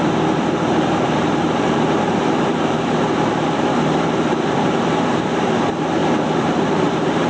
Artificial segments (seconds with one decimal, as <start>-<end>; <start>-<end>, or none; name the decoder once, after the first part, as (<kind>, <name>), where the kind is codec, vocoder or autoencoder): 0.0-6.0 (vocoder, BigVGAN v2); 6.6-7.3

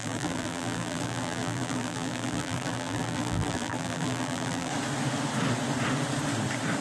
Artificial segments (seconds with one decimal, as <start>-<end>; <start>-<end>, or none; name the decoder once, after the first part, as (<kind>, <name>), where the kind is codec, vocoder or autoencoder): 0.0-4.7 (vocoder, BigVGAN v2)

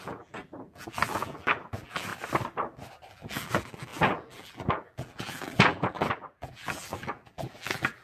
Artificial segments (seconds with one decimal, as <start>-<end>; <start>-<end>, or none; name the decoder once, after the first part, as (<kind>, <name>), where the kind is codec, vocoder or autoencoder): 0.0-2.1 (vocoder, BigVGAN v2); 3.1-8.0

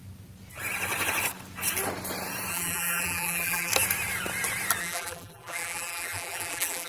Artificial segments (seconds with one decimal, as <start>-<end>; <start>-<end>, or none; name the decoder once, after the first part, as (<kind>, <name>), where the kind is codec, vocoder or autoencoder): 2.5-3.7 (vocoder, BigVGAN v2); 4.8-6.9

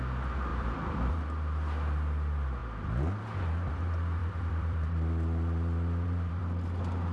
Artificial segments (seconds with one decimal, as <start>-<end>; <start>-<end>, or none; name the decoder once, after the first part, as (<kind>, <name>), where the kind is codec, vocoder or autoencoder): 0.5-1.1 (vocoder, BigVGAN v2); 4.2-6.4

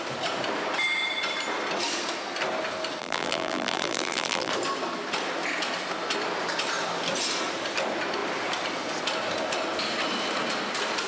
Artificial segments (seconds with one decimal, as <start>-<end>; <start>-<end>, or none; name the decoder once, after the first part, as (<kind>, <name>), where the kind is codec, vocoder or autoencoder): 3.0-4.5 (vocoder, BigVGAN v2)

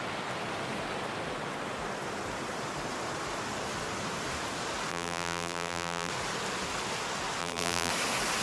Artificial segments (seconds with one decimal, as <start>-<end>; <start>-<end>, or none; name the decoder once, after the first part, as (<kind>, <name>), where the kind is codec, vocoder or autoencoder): 4.9-6.1 (vocoder, BigVGAN v2); 7.4-7.9